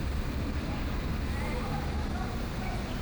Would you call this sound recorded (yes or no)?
yes